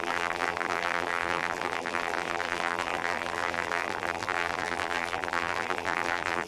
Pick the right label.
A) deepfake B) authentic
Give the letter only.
A